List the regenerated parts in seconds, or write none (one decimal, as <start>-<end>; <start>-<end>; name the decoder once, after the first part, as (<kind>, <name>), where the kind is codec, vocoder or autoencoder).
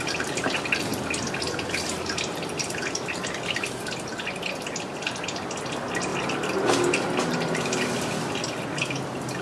none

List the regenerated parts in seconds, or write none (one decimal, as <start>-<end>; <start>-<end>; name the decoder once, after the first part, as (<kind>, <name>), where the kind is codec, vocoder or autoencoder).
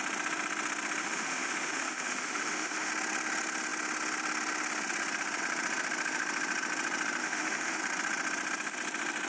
1.0-2.9 (autoencoder, DAC-VAE); 7.2-7.8